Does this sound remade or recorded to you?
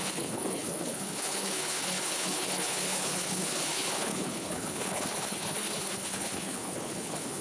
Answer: remade